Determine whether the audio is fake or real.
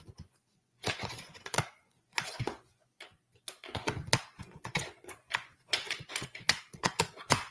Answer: fake